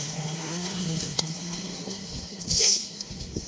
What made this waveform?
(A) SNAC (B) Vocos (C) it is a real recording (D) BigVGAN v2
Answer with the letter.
A